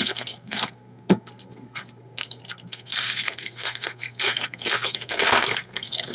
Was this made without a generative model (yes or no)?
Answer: no